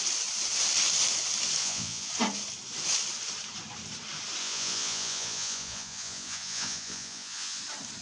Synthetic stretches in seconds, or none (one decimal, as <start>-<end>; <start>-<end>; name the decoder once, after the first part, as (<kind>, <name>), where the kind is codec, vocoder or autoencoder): 1.6-2.1 (vocoder, Vocos); 4.4-7.6